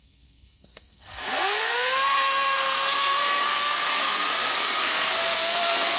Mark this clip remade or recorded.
remade